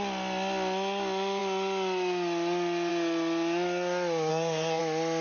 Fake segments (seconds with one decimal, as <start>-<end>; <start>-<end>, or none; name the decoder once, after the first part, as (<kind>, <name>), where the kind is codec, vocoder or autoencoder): 4.3-4.8 (codec, SNAC)